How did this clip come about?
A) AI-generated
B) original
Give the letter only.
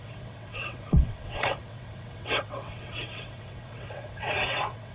A